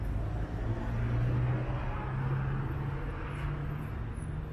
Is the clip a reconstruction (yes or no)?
no